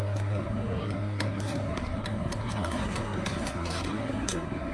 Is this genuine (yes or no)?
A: no